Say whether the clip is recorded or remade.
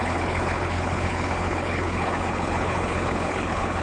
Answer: remade